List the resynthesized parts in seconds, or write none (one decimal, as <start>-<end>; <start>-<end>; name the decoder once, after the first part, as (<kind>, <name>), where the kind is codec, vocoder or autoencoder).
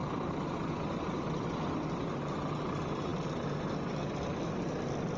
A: none